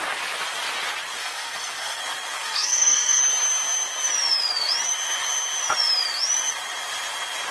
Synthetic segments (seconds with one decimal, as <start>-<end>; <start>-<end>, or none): 1.2-2.0; 2.4-3.2